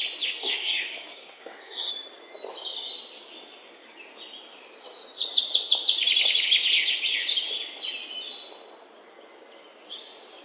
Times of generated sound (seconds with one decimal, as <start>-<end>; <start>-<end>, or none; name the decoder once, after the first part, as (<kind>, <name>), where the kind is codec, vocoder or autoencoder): 0.4-1.9 (codec, SNAC)